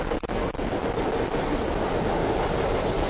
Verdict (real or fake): real